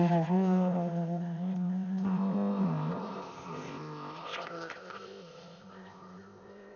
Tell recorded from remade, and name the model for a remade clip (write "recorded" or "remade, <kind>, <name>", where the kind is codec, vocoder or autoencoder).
remade, codec, ZipCodec